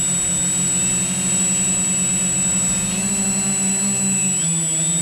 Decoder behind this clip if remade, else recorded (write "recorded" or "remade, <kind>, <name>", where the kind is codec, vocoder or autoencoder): recorded